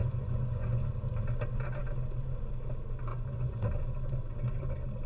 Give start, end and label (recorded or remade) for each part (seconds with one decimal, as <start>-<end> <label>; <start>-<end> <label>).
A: 0.0-0.8 remade; 0.8-3.1 recorded; 3.1-3.7 remade; 3.7-5.1 recorded